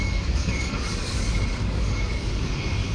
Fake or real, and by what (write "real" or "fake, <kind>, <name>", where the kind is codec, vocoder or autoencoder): fake, codec, DAC